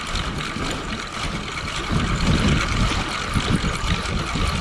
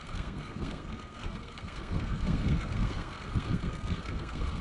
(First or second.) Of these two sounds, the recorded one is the first